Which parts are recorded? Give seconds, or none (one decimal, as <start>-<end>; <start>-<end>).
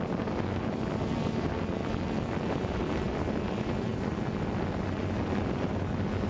0.0-6.3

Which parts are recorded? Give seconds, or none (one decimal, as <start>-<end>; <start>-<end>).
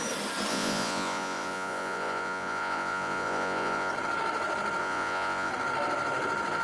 0.0-0.5; 3.9-4.8; 5.5-6.6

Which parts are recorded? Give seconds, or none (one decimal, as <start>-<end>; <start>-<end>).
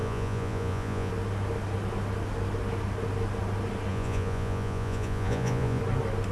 1.1-3.9; 5.8-6.3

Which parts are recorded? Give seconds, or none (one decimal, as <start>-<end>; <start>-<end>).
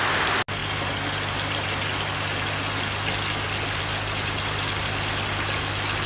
0.0-6.1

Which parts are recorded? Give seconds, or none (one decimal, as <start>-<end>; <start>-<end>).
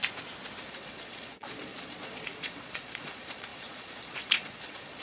0.0-0.7